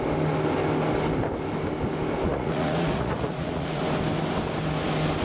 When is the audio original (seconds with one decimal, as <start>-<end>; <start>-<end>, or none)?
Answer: 0.0-2.3; 3.8-5.2